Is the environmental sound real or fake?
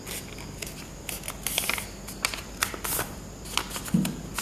real